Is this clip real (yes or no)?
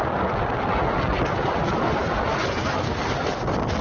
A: yes